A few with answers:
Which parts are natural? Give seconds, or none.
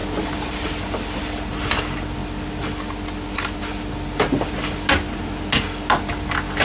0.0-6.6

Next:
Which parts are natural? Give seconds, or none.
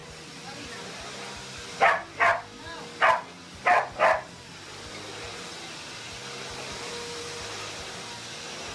0.0-8.7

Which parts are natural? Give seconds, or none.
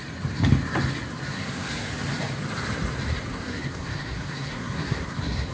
0.0-1.3; 1.9-3.3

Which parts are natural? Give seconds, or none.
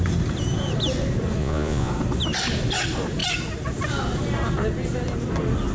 0.0-1.4; 1.9-5.7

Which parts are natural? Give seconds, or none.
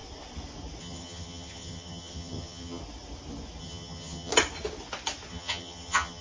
0.0-0.8; 2.8-3.6; 4.3-5.3